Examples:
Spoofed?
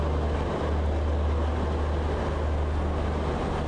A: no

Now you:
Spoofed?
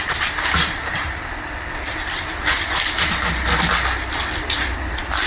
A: yes